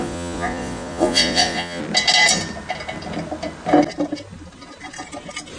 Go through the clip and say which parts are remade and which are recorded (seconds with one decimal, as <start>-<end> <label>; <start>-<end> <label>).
0.0-1.8 remade; 1.8-5.6 recorded